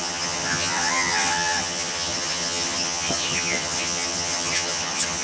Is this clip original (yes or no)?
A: no